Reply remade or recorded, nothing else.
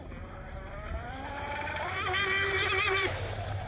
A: remade